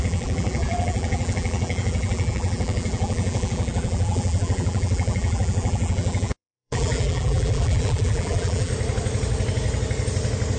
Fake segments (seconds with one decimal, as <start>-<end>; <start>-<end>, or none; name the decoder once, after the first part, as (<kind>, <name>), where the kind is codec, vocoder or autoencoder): 0.0-8.7 (vocoder, BigVGAN v2)